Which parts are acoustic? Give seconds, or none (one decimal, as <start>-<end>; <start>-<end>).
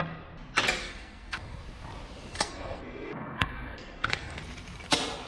0.0-0.8; 1.6-2.3; 4.4-5.3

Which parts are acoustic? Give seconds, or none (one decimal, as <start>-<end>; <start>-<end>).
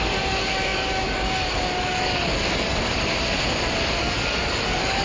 2.9-4.0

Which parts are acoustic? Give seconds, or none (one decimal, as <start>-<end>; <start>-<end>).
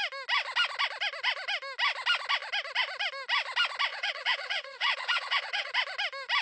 0.0-3.9; 5.7-6.4